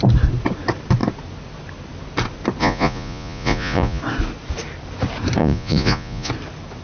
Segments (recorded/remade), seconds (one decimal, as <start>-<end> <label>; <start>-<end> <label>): 0.0-2.6 recorded; 2.6-4.0 remade; 4.0-5.4 recorded; 5.4-6.3 remade; 6.3-6.8 recorded